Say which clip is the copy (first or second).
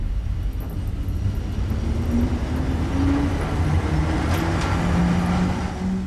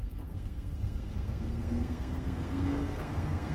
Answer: second